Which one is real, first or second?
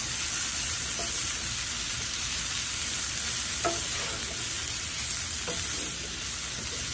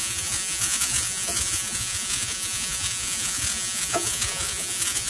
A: first